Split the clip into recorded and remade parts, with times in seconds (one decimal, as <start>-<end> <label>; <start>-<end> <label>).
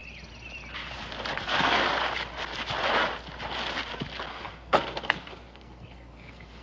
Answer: 0.0-1.4 recorded; 1.4-1.8 remade; 1.8-4.3 recorded; 4.3-6.6 remade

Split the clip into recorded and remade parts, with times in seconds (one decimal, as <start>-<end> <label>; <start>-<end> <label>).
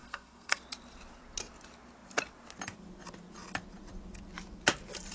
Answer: 0.0-0.6 remade; 0.6-5.1 recorded